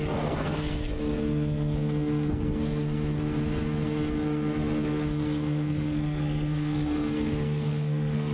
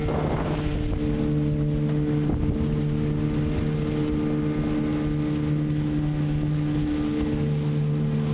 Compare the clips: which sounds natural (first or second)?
second